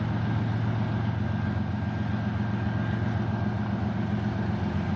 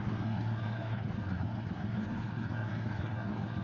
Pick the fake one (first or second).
second